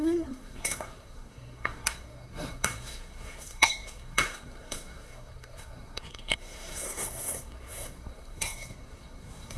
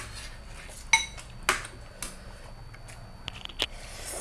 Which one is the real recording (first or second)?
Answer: second